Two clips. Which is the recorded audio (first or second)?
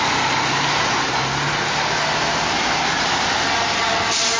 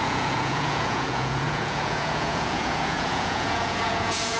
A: first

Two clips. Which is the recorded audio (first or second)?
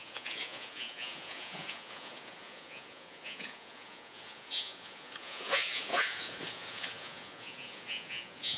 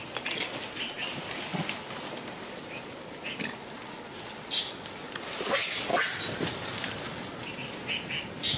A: second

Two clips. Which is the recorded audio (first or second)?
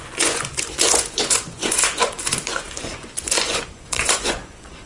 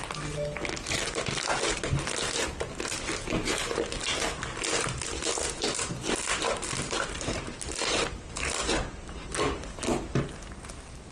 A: second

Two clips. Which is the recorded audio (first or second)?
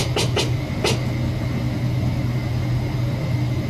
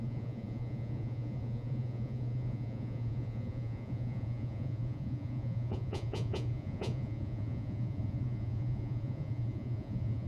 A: first